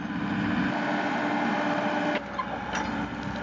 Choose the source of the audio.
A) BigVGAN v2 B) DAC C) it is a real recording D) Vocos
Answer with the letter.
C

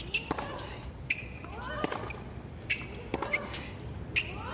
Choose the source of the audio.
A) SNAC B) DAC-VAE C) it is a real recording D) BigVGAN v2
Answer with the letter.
C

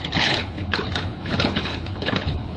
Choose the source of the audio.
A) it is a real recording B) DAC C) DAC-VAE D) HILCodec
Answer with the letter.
D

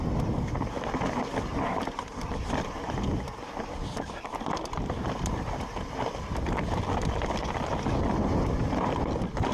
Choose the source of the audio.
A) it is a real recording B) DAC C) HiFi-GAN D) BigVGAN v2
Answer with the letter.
A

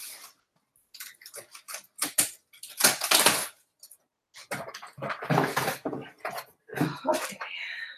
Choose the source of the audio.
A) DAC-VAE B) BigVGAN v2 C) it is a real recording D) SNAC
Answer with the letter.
C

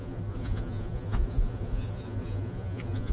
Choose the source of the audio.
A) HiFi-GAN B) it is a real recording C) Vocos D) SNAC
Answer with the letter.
C